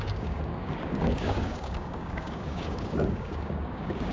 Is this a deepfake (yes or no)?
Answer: yes